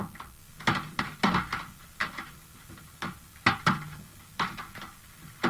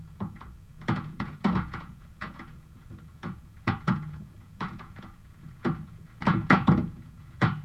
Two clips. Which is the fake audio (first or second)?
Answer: second